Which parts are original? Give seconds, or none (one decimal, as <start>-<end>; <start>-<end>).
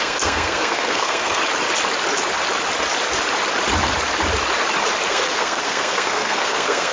1.4-5.1